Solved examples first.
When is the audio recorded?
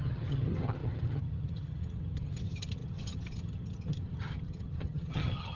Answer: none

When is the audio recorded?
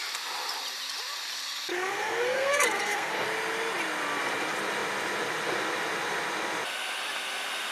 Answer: 0.0-1.7; 3.1-7.7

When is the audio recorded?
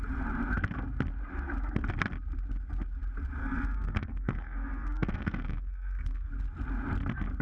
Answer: 0.0-3.4; 6.3-7.4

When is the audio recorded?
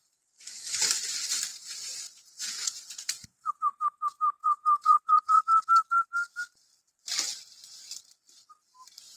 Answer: 0.0-1.5; 3.5-4.4; 5.4-9.2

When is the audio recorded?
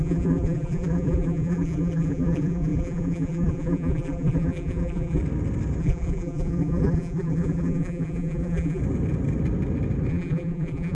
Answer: 5.2-5.8; 8.8-10.1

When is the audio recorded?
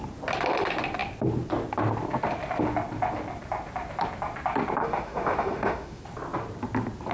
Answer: 0.0-4.8; 6.0-7.1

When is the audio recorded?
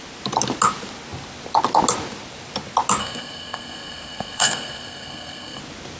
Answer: 0.0-3.0; 5.6-6.0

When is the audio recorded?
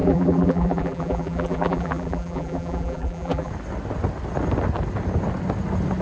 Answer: 3.5-6.0